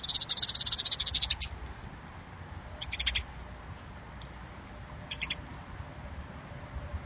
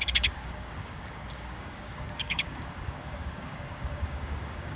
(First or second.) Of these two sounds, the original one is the first